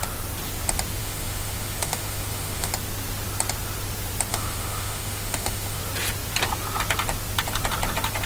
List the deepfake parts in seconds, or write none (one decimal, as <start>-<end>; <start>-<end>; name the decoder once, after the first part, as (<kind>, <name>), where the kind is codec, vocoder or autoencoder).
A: 1.0-2.7 (autoencoder, DAC-VAE); 4.3-5.8